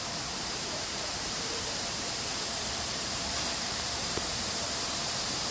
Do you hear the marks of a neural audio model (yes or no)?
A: yes